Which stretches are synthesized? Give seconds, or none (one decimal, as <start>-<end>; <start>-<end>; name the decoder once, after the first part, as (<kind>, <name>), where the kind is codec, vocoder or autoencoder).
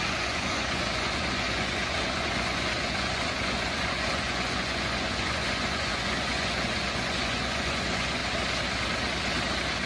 0.0-8.2 (vocoder, Vocos)